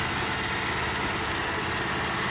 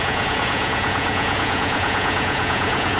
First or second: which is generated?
second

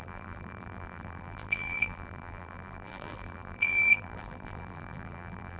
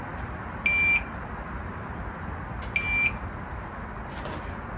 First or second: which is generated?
first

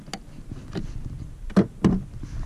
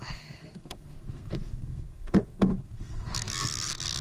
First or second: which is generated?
second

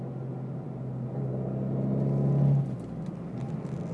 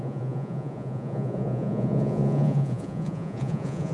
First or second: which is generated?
second